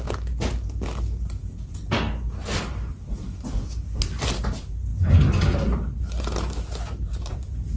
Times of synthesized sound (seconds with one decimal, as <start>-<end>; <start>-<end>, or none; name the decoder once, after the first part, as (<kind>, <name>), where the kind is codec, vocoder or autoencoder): none